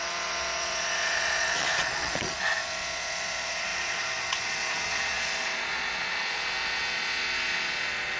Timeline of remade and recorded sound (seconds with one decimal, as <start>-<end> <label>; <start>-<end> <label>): 0.0-8.2 remade

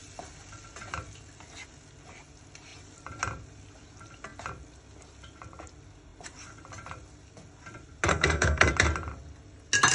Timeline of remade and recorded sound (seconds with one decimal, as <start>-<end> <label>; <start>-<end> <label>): 0.0-8.1 recorded; 8.1-8.7 remade; 8.7-9.9 recorded

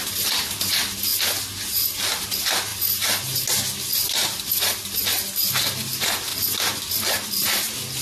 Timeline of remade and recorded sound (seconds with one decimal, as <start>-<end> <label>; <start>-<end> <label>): 0.0-8.0 recorded

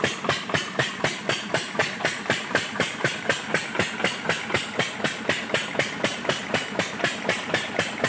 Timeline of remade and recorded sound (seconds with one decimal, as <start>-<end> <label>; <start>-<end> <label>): 0.0-1.8 recorded; 1.8-3.0 remade; 3.0-8.1 recorded

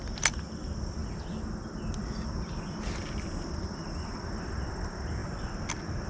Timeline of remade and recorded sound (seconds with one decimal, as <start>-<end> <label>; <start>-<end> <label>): 0.0-6.1 recorded